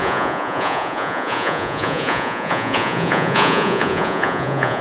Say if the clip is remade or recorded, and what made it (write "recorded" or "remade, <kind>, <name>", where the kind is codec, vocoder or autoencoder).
remade, vocoder, Vocos